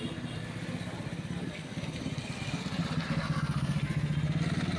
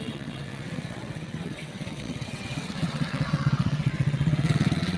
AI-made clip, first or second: second